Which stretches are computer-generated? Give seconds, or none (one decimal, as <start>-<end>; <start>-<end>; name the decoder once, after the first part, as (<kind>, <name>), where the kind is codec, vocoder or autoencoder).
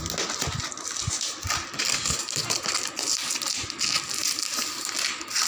none